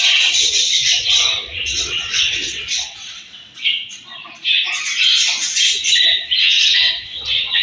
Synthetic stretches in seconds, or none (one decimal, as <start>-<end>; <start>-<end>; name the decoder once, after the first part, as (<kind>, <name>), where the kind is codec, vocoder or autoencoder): 0.0-4.1 (vocoder, WaveNeXt); 6.4-7.6